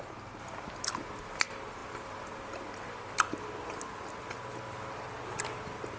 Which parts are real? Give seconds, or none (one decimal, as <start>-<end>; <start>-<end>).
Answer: 0.0-6.0